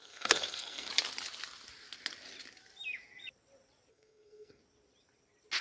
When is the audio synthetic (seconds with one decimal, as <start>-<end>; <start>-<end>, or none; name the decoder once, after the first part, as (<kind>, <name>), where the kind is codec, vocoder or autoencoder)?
0.0-0.9 (codec, SNAC); 3.9-4.6